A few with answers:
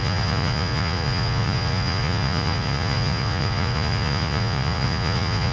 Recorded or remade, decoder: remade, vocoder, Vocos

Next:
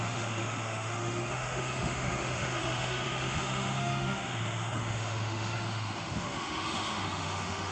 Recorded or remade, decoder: remade, autoencoder, DAC-VAE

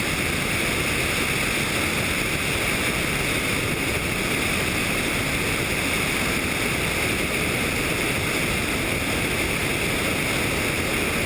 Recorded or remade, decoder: recorded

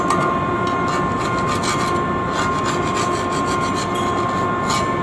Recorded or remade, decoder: recorded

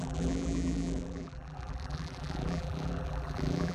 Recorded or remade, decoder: remade, vocoder, BigVGAN v2